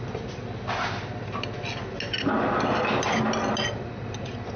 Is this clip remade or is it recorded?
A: recorded